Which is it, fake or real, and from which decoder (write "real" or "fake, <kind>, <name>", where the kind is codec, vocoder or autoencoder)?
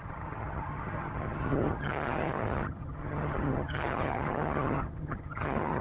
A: fake, vocoder, HiFi-GAN